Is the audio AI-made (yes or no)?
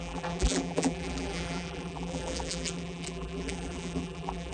yes